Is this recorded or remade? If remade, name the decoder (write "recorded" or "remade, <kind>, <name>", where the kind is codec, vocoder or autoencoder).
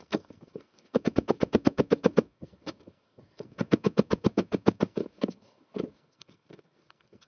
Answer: remade, codec, SNAC